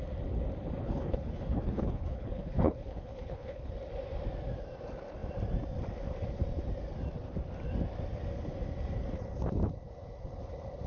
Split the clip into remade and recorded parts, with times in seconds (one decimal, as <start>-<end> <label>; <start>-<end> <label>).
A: 0.0-0.8 recorded; 0.8-3.7 remade; 3.7-10.9 recorded